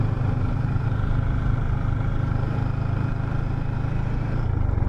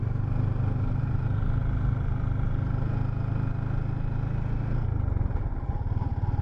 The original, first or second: second